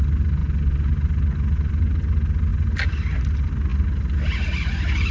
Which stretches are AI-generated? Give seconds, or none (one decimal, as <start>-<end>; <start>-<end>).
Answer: none